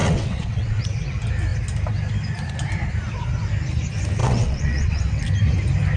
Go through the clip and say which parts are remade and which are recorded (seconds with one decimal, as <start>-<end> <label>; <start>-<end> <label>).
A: 0.0-0.8 remade; 0.8-4.2 recorded; 4.2-5.2 remade; 5.2-6.0 recorded

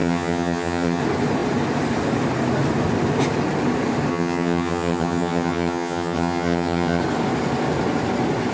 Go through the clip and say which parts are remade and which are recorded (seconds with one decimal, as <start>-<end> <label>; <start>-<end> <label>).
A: 0.0-1.0 remade; 1.0-4.1 recorded; 4.1-7.0 remade; 7.0-8.5 recorded

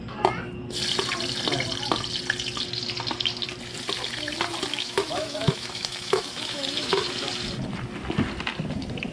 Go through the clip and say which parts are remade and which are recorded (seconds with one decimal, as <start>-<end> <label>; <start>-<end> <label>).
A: 0.0-4.7 recorded; 4.7-7.0 remade; 7.0-9.1 recorded

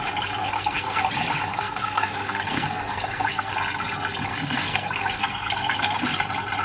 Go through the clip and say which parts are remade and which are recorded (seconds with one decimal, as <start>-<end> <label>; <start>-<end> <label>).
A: 0.0-0.4 recorded; 0.4-1.1 remade; 1.1-1.5 recorded; 1.5-3.5 remade; 3.5-4.3 recorded; 4.3-6.0 remade; 6.0-6.6 recorded

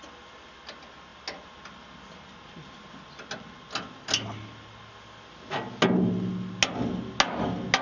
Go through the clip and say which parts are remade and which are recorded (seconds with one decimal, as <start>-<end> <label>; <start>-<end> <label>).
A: 0.0-7.8 recorded